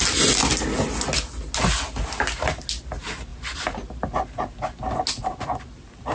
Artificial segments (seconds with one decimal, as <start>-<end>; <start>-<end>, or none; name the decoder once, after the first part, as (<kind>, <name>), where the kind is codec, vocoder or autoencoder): none